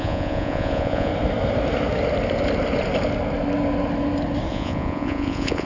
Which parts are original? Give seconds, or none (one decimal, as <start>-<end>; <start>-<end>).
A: 1.1-4.5